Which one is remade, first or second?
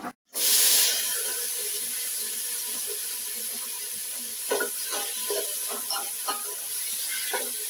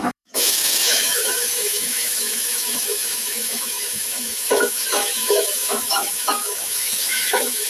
second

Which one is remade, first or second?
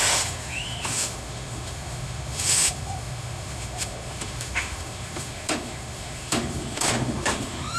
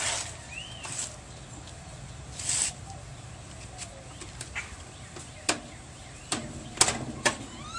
first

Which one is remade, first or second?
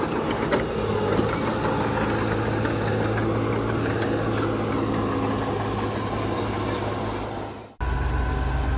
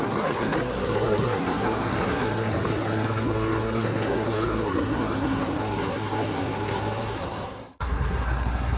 second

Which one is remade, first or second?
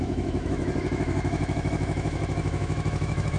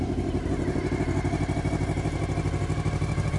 first